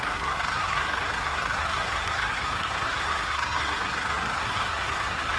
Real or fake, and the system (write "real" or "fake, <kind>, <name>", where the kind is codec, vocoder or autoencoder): fake, codec, SNAC